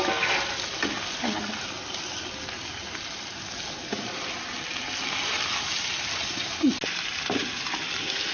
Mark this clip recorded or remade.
recorded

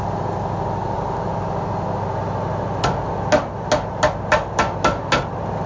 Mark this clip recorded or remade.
recorded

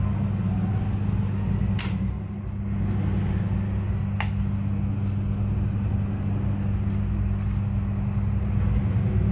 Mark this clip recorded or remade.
recorded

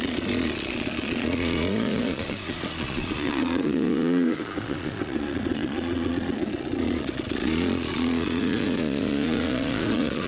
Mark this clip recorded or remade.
remade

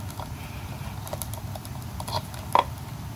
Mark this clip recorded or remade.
recorded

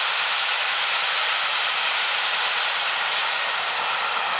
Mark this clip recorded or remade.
recorded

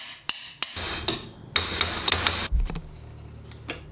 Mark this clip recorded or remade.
recorded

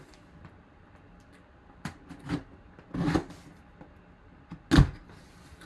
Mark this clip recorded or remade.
recorded